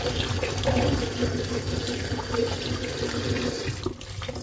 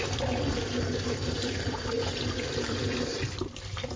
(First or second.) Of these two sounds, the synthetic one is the second